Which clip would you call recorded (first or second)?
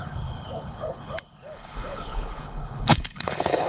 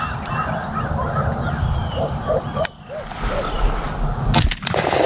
second